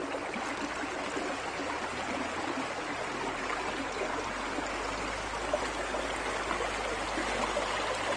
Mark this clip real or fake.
real